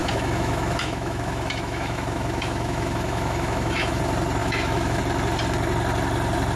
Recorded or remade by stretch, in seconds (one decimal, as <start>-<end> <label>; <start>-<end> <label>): 0.0-4.0 remade; 4.0-4.4 recorded; 4.4-5.0 remade; 5.0-6.6 recorded